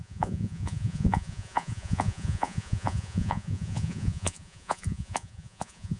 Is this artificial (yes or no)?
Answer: yes